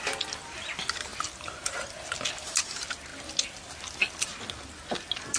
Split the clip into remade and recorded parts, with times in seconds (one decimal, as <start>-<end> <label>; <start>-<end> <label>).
0.0-5.4 recorded